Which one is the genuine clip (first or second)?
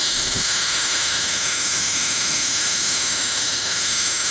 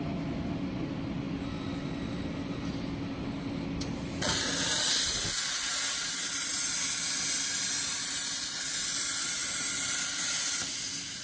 second